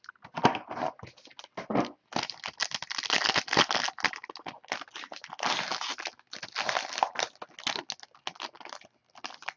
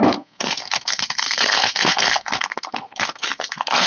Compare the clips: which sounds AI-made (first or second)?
second